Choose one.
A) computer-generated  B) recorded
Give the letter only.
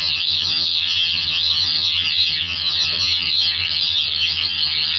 A